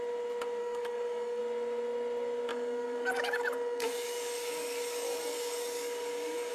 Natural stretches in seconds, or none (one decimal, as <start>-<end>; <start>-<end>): 0.0-0.6; 1.4-2.5

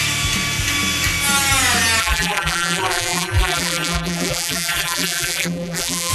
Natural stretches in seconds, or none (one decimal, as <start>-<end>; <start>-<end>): 0.0-2.0